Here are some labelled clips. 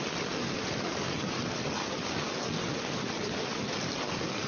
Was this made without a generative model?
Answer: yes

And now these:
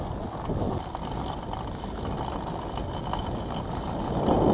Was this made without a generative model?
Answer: yes